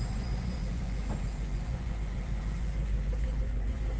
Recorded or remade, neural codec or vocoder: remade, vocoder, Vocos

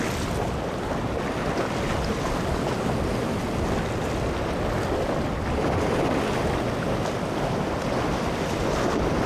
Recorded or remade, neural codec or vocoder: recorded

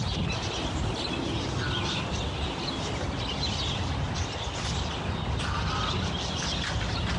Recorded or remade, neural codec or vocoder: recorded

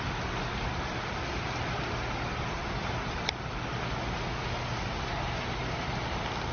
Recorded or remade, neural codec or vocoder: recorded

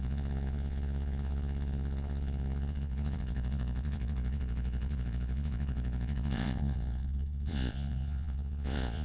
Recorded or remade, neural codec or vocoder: remade, vocoder, Vocos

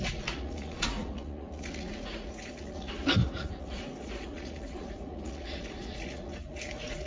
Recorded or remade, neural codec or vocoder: remade, vocoder, Vocos